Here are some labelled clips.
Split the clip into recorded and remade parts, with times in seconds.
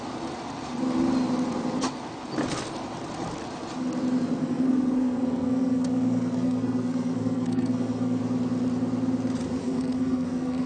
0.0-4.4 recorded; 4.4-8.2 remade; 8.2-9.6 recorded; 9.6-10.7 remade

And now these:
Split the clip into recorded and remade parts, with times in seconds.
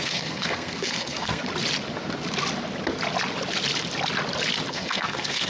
0.0-1.4 remade; 1.4-4.7 recorded; 4.7-5.5 remade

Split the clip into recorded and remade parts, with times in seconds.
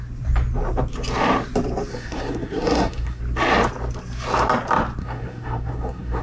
0.0-1.9 recorded; 1.9-3.2 remade; 3.2-5.0 recorded; 5.0-6.2 remade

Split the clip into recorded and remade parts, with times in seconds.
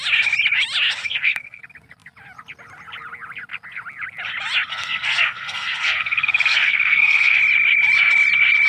0.0-1.0 recorded; 1.0-1.6 remade; 1.6-4.7 recorded; 4.7-7.4 remade; 7.4-8.7 recorded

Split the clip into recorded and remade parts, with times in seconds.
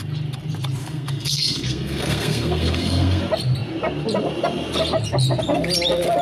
0.0-0.8 recorded; 0.8-3.2 remade; 3.2-6.2 recorded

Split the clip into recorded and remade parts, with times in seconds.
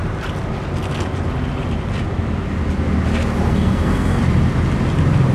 0.0-3.5 recorded; 3.5-4.2 remade; 4.2-5.3 recorded